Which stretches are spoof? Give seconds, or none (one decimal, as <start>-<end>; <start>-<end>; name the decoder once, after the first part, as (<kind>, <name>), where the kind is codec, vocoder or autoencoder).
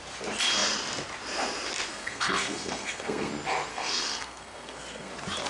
1.9-3.3 (codec, SNAC); 3.7-5.1